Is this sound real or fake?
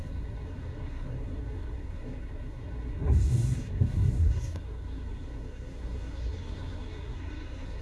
fake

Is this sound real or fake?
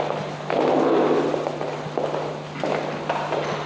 real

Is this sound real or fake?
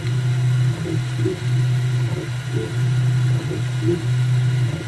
real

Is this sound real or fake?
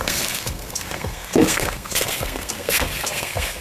fake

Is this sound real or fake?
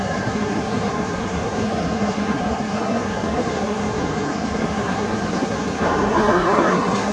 fake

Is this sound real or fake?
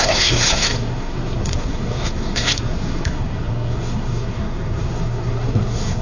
fake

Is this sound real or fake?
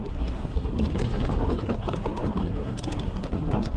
fake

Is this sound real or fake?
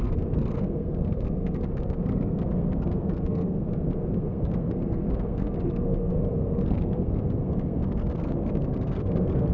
fake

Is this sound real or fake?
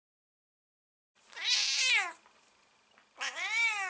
real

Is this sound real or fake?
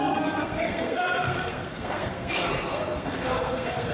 fake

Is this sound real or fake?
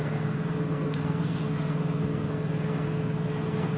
fake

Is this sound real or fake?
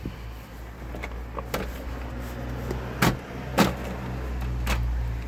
real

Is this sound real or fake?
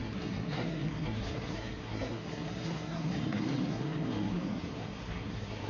fake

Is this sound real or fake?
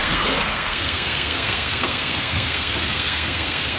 fake